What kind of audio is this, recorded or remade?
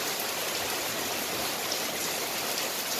recorded